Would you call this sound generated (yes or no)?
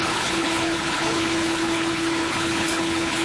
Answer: yes